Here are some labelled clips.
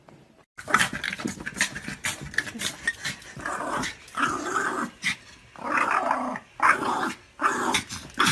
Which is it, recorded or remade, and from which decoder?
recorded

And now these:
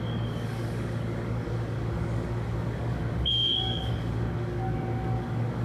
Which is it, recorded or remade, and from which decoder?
remade, codec, DAC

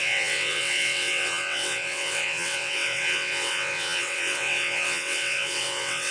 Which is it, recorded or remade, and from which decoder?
remade, vocoder, WaveNeXt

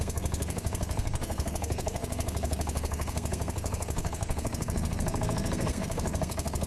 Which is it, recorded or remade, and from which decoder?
remade, codec, SNAC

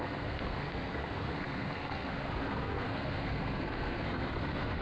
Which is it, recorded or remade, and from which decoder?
remade, codec, SNAC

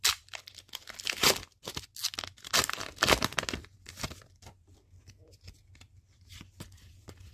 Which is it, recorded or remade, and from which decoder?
recorded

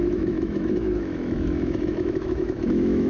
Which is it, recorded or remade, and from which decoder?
remade, autoencoder, DAC-VAE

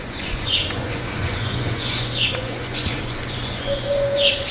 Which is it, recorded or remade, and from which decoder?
remade, vocoder, Vocos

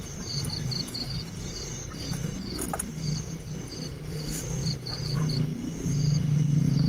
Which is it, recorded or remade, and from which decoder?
remade, vocoder, BigVGAN v2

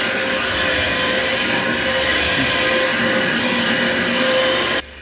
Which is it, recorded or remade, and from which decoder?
recorded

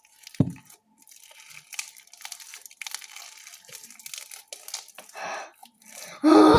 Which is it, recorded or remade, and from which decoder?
recorded